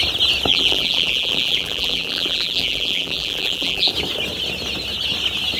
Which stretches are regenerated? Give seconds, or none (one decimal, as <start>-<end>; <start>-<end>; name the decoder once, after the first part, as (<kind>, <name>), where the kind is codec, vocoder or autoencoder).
0.5-3.9 (vocoder, BigVGAN v2)